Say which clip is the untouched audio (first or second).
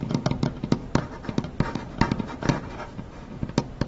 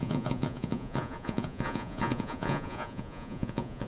first